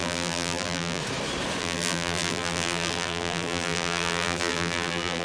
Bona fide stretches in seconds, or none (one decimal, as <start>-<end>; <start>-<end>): 1.0-1.6